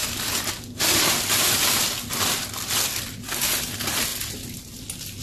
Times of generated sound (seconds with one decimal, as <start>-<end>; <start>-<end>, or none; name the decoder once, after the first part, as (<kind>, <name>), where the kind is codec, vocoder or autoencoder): none